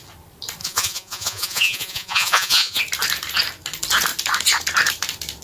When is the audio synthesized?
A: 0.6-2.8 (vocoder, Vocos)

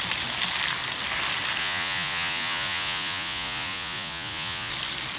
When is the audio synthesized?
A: 1.6-4.7 (vocoder, Vocos)

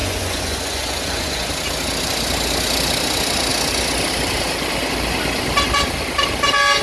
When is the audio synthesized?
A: 0.0-1.5 (vocoder, Vocos)

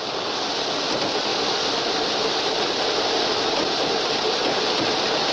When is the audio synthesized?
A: none

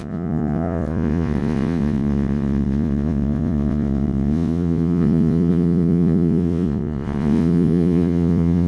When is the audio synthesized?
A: 0.0-8.7 (vocoder, Vocos)

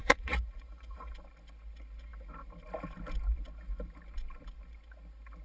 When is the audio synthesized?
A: 0.0-1.1 (vocoder, Vocos)

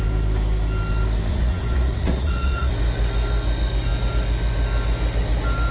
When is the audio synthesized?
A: 1.3-2.7 (vocoder, Vocos)